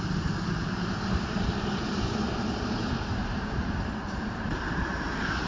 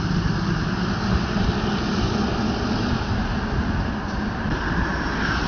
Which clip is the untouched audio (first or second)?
second